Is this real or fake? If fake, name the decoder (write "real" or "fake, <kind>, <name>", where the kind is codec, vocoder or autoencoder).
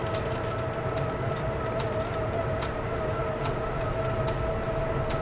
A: real